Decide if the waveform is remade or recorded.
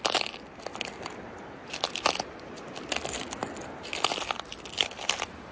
recorded